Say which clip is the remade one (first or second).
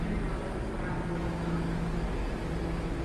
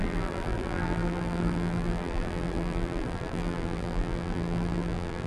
second